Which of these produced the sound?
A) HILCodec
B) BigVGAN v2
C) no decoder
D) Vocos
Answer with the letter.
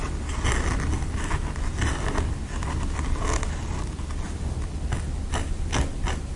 C